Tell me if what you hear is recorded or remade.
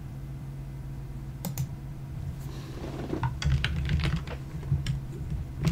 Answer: remade